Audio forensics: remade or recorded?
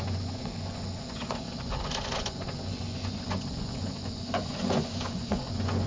remade